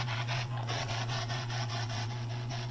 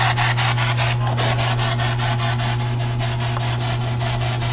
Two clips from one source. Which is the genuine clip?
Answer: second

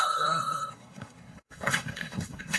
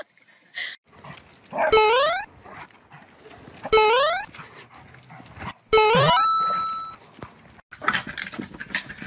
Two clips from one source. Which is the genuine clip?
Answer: second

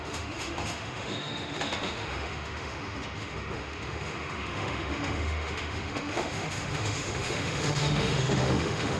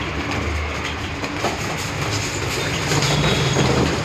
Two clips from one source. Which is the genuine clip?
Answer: second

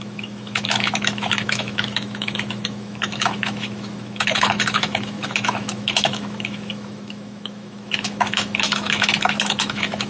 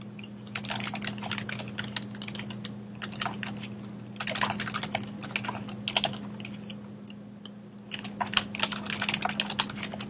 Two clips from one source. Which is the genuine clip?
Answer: second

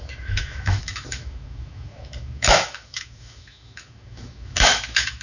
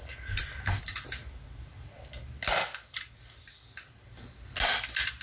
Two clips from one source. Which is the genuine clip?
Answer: second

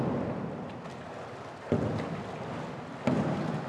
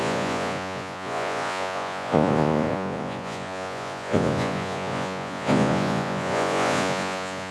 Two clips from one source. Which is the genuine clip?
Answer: first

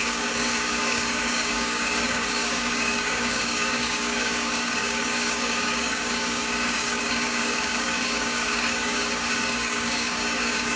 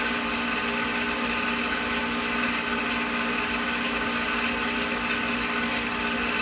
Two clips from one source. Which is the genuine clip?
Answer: second